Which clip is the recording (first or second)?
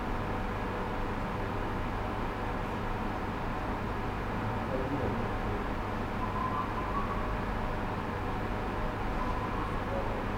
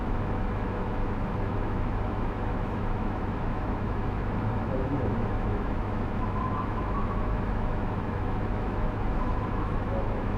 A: first